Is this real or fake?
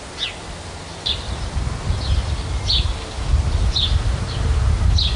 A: real